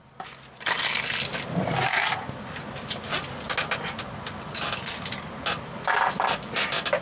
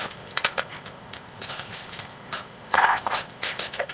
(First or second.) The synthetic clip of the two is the second